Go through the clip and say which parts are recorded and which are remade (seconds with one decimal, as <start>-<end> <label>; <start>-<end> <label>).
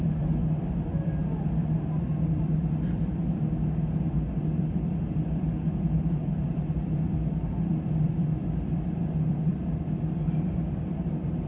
0.0-1.2 remade; 1.2-2.2 recorded; 2.2-3.2 remade; 3.2-4.1 recorded; 4.1-11.5 remade